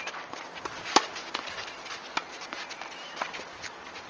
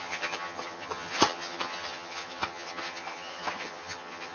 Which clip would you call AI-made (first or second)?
second